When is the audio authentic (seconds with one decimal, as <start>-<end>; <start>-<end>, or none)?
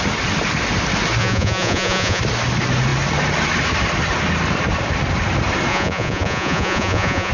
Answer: 0.0-1.2; 2.2-5.7